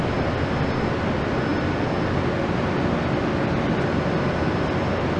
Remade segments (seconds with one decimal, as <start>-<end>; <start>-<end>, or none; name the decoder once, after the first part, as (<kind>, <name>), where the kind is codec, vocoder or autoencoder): none